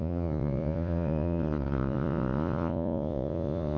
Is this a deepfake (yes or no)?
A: yes